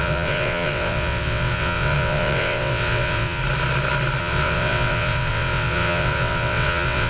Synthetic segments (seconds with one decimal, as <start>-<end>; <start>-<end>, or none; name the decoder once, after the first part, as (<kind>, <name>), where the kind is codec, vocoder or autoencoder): 0.0-3.4 (vocoder, WaveNeXt); 4.2-7.1